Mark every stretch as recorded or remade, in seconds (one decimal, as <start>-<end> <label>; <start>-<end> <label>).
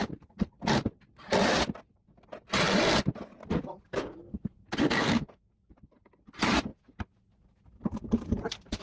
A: 0.0-5.0 recorded; 5.0-5.5 remade; 5.5-8.8 recorded